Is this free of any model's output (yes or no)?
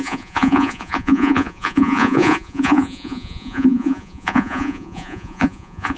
no